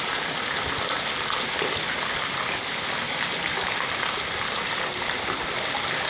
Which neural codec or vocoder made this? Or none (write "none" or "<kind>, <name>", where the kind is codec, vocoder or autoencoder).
none